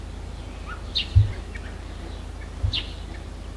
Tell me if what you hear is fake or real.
real